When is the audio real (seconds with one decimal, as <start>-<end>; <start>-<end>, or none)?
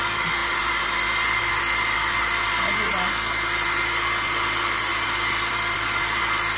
0.0-6.6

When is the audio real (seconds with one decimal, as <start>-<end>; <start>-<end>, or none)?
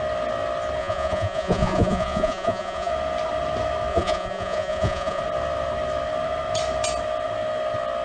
0.0-0.8; 2.9-3.9; 5.2-8.0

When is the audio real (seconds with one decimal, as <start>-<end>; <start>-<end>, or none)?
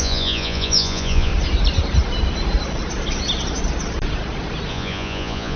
1.3-4.7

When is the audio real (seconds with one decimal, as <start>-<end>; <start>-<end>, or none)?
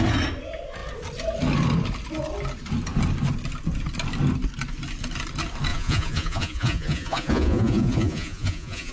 0.0-5.7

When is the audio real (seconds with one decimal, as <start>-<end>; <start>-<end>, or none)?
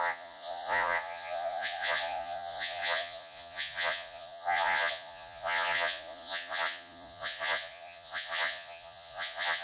none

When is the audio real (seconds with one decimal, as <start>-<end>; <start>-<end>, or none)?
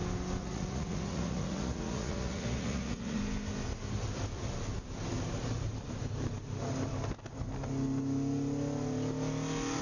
0.0-0.4; 3.2-9.8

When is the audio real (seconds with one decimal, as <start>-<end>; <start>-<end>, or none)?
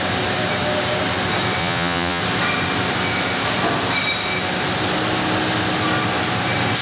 0.0-1.6; 2.2-6.8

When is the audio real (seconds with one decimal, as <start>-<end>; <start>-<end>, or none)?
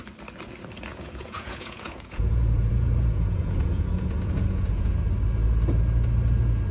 0.0-0.9; 4.9-6.7